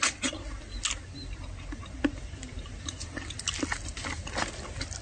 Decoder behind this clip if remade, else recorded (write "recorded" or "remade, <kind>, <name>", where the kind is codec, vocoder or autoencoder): recorded